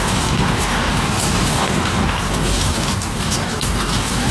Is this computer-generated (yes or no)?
yes